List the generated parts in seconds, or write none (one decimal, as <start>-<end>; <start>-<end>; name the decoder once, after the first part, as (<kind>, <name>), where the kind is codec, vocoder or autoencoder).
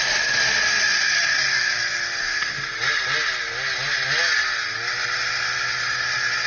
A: none